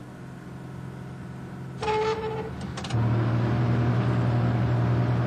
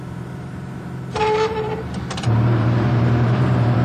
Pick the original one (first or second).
first